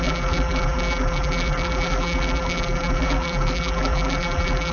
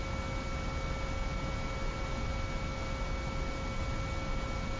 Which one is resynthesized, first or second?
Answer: first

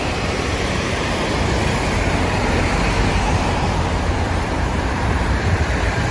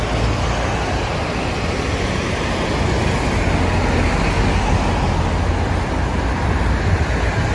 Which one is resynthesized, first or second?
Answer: first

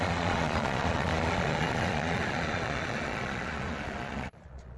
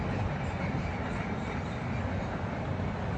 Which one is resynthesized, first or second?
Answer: first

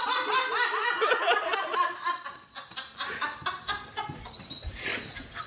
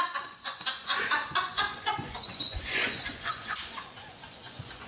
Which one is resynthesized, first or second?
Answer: second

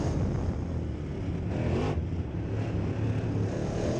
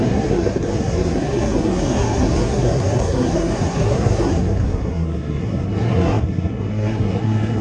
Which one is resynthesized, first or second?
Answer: second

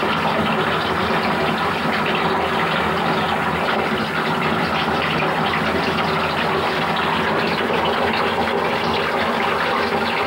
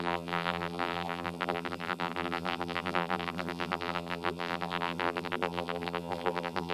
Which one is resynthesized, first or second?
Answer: second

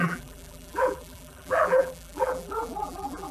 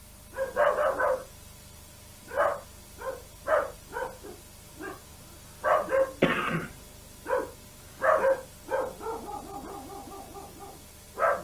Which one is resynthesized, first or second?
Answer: first